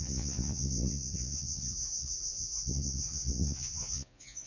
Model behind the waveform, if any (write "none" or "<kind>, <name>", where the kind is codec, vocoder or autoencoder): vocoder, Vocos